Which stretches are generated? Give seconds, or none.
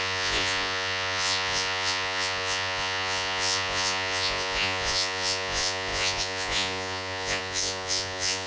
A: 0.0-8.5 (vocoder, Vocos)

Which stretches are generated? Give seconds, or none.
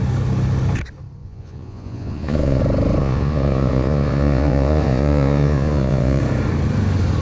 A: 1.2-2.6 (vocoder, Vocos); 3.0-6.2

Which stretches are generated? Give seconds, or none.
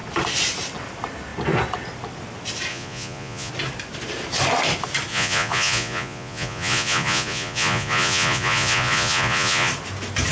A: 2.7-3.5 (vocoder, Vocos); 5.1-9.7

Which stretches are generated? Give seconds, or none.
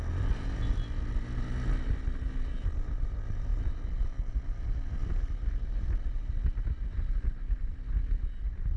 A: none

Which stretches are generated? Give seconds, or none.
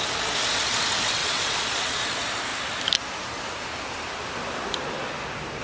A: 1.2-2.0 (vocoder, Vocos)